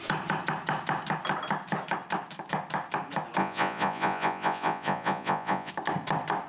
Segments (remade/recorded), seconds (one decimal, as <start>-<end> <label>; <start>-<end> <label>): 0.0-3.4 recorded; 3.4-5.7 remade; 5.7-6.5 recorded